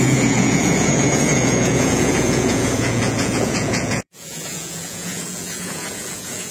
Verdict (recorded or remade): remade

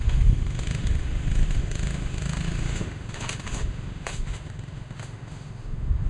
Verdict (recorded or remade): remade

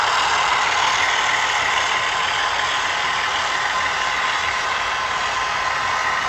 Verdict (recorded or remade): recorded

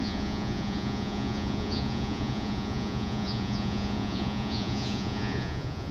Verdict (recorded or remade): remade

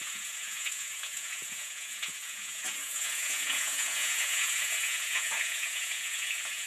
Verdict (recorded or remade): remade